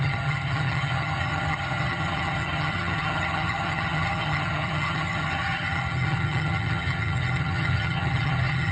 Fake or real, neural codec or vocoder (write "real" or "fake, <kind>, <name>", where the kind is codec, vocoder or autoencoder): fake, vocoder, HiFi-GAN